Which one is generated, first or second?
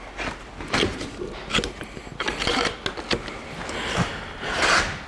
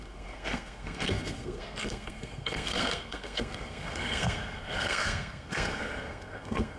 second